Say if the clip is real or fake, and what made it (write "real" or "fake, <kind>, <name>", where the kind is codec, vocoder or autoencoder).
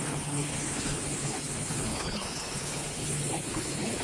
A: fake, codec, HILCodec